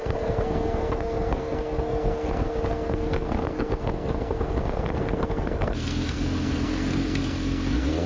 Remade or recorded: remade